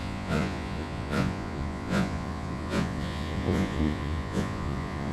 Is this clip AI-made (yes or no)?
yes